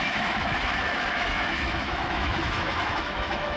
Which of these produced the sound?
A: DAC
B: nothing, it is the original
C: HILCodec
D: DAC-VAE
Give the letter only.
D